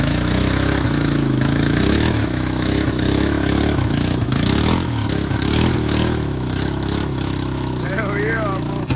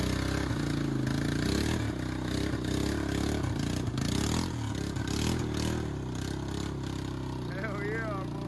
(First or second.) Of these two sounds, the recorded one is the second